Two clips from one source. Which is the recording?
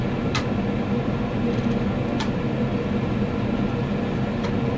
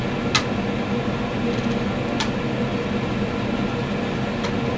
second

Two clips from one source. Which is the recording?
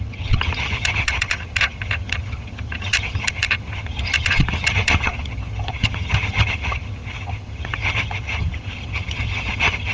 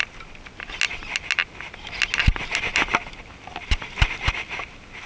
second